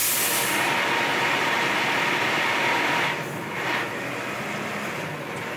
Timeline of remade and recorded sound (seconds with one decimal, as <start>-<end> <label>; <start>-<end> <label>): 0.0-1.1 recorded; 1.1-2.0 remade; 2.0-5.6 recorded